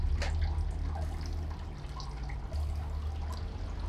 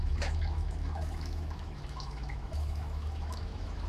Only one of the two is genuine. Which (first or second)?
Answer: first